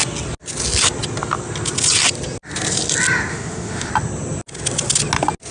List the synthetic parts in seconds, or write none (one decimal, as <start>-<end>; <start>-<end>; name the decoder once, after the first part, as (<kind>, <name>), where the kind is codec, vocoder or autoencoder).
3.3-3.9 (autoencoder, DAC-VAE)